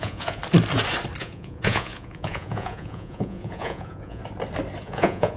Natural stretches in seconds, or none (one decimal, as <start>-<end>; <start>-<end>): 0.4-1.2; 4.2-4.8